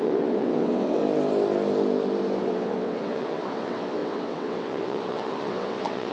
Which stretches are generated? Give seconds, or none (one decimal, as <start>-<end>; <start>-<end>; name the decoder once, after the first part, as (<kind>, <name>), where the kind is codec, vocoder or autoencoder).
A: 0.0-1.0 (vocoder, WaveNeXt); 2.4-6.1